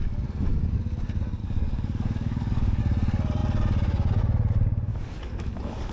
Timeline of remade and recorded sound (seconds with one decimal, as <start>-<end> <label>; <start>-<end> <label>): 0.0-1.4 recorded; 1.4-2.8 remade; 2.8-4.9 recorded; 4.9-5.9 remade